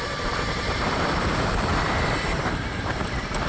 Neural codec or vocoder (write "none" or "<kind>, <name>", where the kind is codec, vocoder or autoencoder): vocoder, BigVGAN v2